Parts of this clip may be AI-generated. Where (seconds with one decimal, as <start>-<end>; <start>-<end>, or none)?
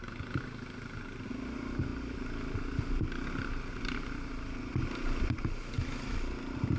none